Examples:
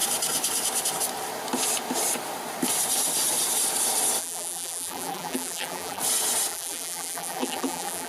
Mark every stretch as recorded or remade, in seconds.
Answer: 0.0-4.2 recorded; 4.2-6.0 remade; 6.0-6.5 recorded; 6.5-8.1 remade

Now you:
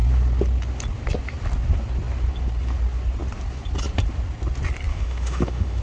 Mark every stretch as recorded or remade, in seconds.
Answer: 0.0-4.9 recorded; 4.9-5.8 remade